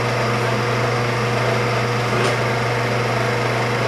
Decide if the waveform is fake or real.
real